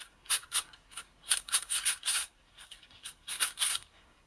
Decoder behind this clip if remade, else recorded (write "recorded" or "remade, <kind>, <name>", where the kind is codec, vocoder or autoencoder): remade, codec, SNAC